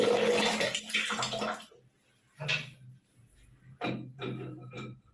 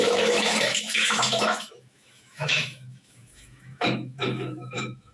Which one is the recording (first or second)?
first